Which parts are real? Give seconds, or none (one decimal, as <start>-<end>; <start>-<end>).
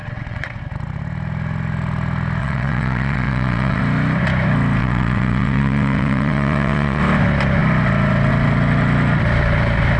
0.6-2.4; 3.8-4.8; 7.0-10.0